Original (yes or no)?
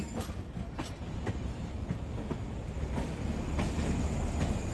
yes